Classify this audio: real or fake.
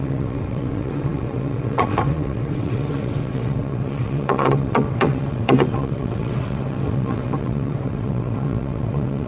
fake